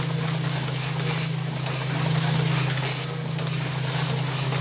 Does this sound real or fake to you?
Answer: real